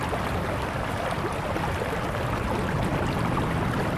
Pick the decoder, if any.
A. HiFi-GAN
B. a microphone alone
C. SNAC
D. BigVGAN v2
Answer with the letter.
B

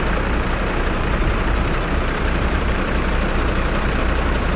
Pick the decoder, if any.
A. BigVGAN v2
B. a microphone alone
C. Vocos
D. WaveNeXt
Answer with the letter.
A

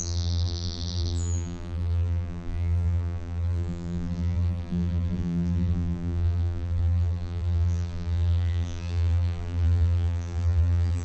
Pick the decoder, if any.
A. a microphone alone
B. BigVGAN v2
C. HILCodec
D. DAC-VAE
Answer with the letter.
B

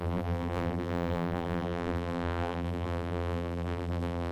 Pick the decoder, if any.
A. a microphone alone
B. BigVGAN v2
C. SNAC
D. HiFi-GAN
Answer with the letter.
B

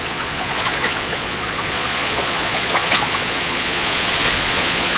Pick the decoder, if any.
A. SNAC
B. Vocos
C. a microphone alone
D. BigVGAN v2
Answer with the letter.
B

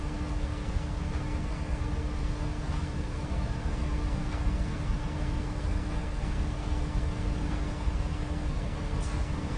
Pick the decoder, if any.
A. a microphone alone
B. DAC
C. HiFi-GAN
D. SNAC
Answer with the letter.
D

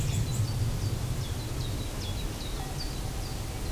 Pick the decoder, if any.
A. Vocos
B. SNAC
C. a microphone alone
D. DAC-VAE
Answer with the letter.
C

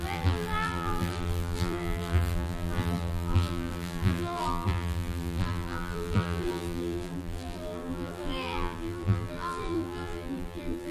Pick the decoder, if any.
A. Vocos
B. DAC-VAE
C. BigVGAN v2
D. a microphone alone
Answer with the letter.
C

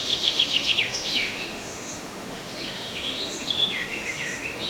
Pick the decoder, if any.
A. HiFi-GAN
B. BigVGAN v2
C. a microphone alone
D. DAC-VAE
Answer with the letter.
D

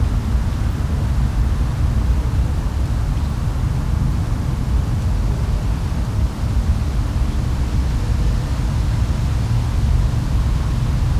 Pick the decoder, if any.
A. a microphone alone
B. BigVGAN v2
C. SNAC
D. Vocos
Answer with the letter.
A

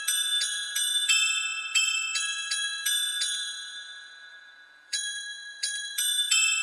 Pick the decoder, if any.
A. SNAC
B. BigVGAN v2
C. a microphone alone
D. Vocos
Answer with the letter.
D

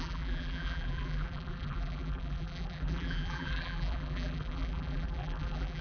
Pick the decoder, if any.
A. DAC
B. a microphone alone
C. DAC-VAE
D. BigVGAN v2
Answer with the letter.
D